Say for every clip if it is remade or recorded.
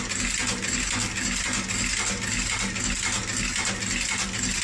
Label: recorded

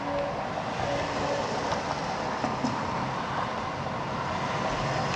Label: recorded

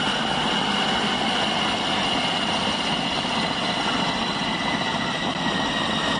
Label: recorded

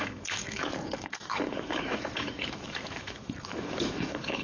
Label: remade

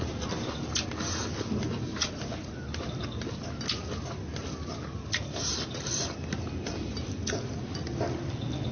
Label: recorded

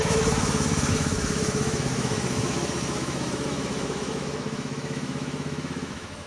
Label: remade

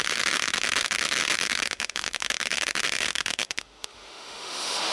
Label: remade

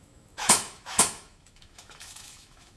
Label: remade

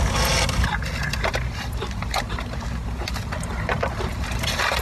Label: recorded